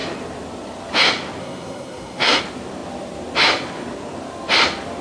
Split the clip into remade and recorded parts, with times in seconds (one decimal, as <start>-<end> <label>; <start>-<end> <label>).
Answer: 0.0-1.4 recorded; 1.4-2.4 remade; 2.4-5.0 recorded